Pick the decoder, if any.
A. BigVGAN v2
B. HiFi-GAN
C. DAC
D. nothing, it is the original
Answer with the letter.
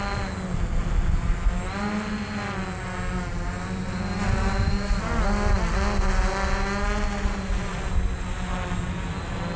D